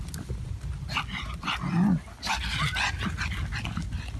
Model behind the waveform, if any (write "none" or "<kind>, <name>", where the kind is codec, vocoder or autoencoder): none